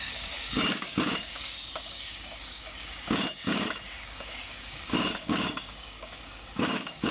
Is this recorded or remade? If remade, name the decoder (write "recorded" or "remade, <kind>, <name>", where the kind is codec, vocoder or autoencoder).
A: remade, codec, DAC